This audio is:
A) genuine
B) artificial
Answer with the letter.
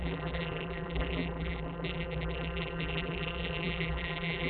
B